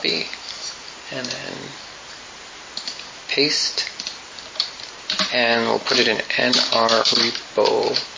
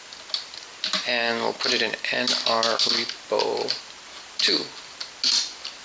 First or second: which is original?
second